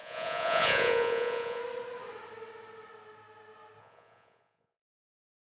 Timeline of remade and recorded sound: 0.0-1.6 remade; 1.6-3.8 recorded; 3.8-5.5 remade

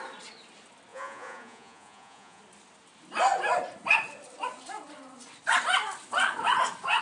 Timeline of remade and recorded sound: 0.0-0.9 recorded; 0.9-2.4 remade; 2.4-7.0 recorded

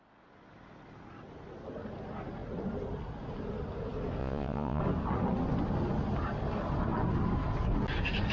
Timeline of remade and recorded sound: 0.0-4.2 recorded; 4.2-4.8 remade; 4.8-8.3 recorded

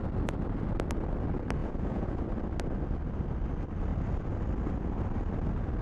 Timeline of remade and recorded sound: 0.0-1.6 recorded; 1.6-2.2 remade; 2.2-5.8 recorded

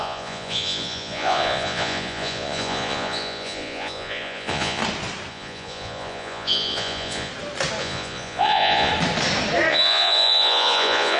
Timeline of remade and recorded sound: 0.0-4.8 remade; 4.8-5.3 recorded; 5.3-7.3 remade; 7.3-7.8 recorded; 7.8-8.9 remade; 8.9-9.7 recorded; 9.7-11.2 remade

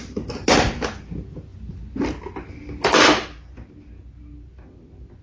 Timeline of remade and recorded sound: 0.0-5.2 recorded

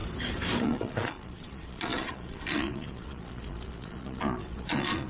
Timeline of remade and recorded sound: 0.0-0.6 recorded; 0.6-5.1 remade

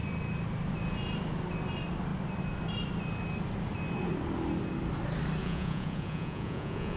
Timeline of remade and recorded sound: 0.0-5.4 recorded; 5.4-7.0 remade